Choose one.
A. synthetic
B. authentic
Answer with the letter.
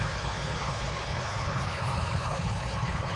A